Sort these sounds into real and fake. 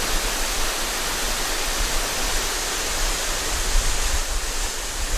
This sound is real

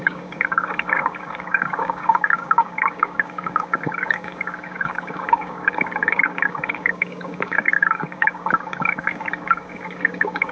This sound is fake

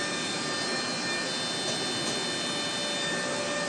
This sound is real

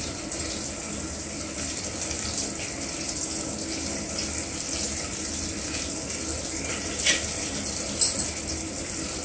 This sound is real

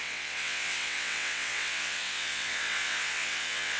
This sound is fake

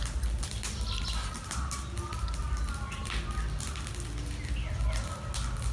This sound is real